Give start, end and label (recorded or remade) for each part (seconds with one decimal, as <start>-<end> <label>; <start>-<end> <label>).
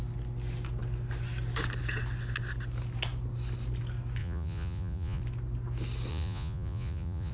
0.0-4.2 recorded; 4.2-5.2 remade; 5.2-6.1 recorded; 6.1-7.3 remade